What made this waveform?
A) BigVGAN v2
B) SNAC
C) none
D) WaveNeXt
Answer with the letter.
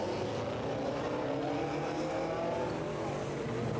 C